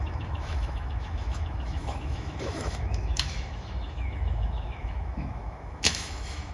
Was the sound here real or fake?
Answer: fake